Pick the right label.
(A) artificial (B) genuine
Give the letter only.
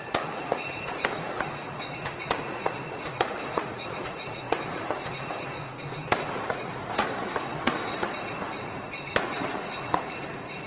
A